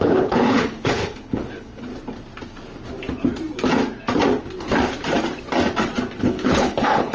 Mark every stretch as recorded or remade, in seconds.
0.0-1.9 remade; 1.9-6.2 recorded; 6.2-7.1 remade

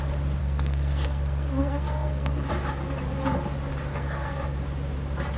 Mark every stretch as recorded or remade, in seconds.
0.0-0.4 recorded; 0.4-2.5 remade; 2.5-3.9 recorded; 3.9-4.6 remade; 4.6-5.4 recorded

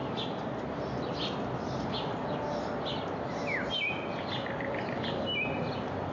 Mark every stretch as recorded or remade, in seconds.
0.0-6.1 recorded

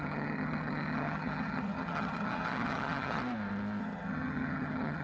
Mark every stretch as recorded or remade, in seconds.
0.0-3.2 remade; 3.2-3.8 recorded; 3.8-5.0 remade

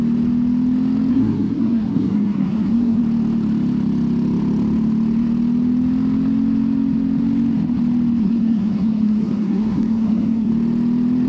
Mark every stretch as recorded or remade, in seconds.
0.0-1.1 recorded; 1.1-3.0 remade; 3.0-8.2 recorded; 8.2-10.5 remade; 10.5-11.3 recorded

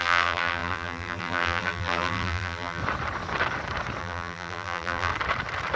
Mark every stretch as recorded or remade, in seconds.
0.0-2.8 remade; 2.8-4.0 recorded; 4.0-5.1 remade; 5.1-5.8 recorded

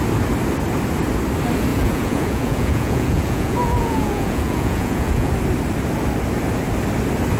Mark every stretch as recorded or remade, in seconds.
0.0-1.7 recorded; 1.7-5.3 remade; 5.3-7.4 recorded

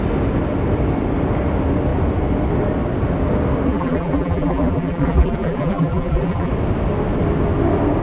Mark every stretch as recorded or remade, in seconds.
0.0-3.7 recorded; 3.7-6.5 remade; 6.5-8.0 recorded